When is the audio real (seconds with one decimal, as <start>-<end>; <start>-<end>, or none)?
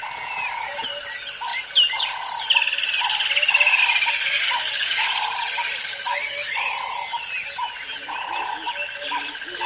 0.0-4.3; 5.1-5.9; 6.7-9.7